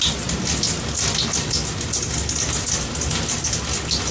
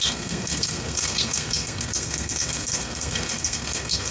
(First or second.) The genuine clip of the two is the first